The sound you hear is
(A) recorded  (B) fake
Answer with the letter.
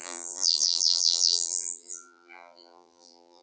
B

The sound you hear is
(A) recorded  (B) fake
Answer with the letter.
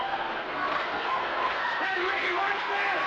B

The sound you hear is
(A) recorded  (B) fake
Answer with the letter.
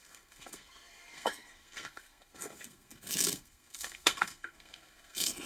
B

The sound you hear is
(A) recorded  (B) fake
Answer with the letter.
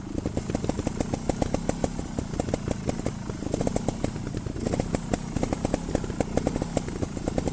A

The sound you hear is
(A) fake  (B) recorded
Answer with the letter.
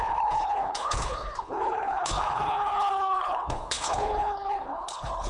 A